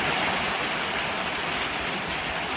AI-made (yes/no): yes